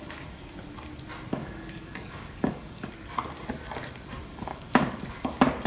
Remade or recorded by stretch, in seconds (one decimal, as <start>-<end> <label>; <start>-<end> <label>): 0.0-1.4 recorded; 1.4-2.9 remade; 2.9-4.5 recorded; 4.5-5.0 remade; 5.0-5.7 recorded